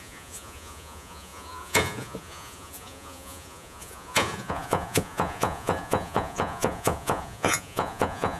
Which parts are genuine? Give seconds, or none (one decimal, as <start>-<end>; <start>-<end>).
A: none